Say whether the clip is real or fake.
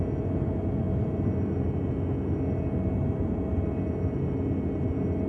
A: real